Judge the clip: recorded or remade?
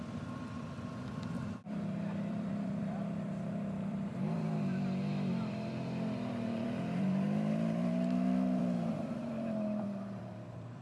remade